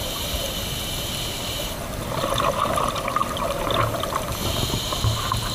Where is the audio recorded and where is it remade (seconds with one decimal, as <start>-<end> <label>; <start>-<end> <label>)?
0.0-5.5 recorded

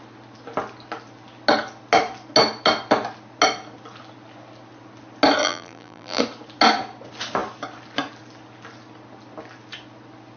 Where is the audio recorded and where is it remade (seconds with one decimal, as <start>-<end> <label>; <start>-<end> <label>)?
0.0-5.4 recorded; 5.4-6.2 remade; 6.2-10.4 recorded

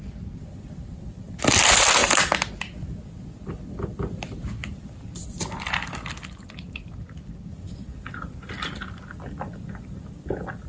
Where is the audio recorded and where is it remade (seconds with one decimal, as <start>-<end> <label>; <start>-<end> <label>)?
0.0-2.0 remade; 2.0-3.5 recorded; 3.5-10.7 remade

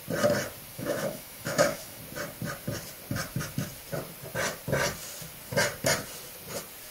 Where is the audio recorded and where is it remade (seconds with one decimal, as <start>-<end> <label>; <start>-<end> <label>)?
0.0-0.7 recorded; 0.7-2.0 remade; 2.0-6.9 recorded